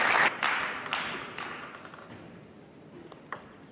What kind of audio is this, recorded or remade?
recorded